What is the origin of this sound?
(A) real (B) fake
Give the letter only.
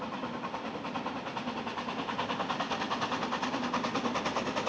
A